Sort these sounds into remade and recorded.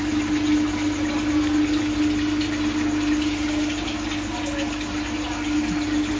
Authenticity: recorded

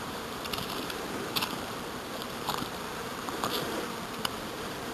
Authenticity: remade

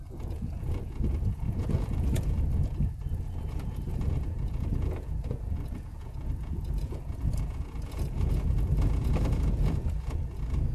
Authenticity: remade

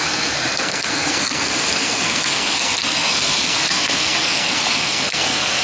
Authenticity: remade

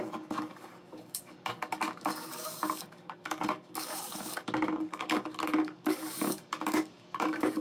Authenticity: remade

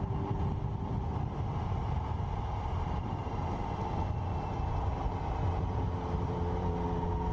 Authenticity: recorded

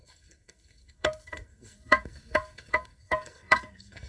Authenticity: remade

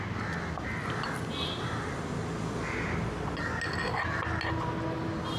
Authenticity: recorded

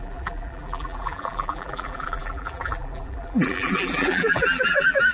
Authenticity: remade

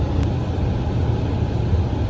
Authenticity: recorded